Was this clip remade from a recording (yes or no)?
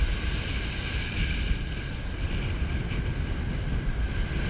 no